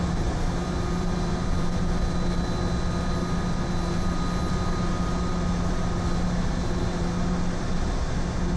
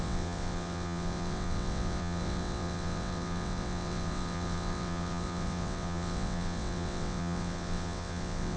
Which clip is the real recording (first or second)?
first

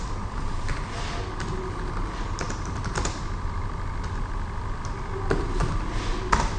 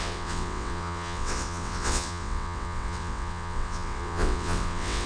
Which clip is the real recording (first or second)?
first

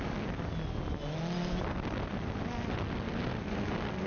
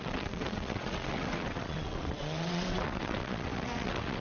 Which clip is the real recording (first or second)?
first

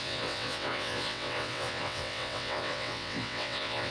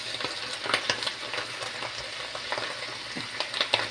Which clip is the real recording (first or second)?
second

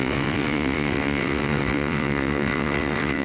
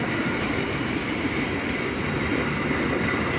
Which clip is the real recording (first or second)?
second